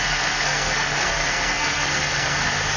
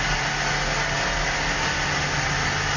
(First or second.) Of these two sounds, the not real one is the first